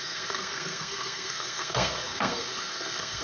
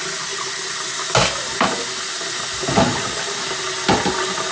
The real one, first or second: second